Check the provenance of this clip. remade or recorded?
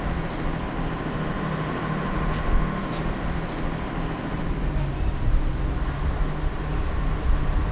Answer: recorded